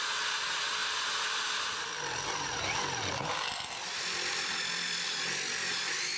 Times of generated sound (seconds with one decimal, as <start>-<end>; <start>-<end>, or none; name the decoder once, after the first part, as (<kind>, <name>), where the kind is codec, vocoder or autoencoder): none